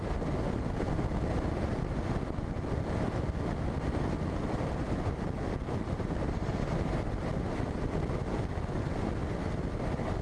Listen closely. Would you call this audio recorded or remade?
recorded